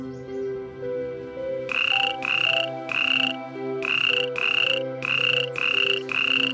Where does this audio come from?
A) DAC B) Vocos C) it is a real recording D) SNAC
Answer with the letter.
C